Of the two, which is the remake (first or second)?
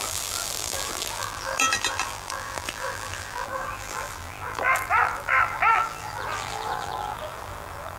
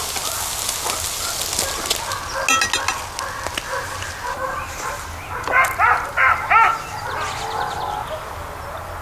first